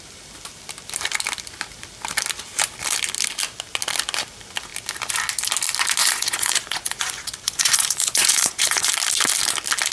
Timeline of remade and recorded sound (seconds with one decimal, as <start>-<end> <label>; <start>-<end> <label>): 0.0-6.0 recorded; 6.0-8.9 remade; 8.9-9.9 recorded